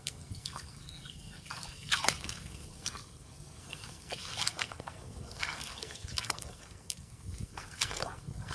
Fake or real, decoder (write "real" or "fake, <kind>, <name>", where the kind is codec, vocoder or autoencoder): fake, codec, SNAC